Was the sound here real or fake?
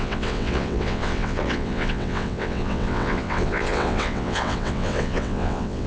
fake